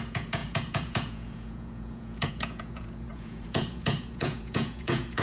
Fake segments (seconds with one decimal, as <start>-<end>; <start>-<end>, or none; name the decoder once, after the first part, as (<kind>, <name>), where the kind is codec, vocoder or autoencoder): 0.0-5.2 (vocoder, Vocos)